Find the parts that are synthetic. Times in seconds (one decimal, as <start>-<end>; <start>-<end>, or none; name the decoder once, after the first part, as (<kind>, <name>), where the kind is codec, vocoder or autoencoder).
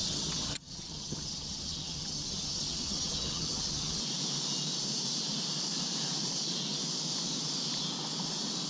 0.0-4.0 (vocoder, HiFi-GAN)